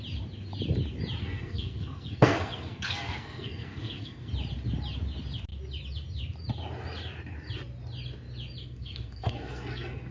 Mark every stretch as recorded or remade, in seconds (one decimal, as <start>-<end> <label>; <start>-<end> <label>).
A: 0.0-1.2 recorded; 1.2-4.3 remade; 4.3-8.6 recorded; 8.6-10.1 remade